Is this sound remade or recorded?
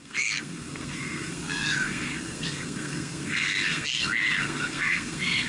remade